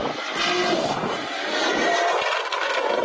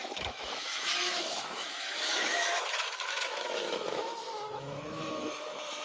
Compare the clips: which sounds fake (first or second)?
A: second